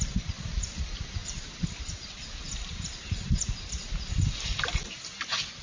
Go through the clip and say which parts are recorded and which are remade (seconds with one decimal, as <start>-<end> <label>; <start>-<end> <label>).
0.0-1.2 recorded; 1.2-4.6 remade; 4.6-5.6 recorded